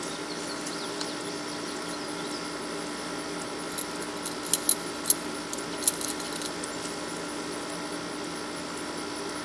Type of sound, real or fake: real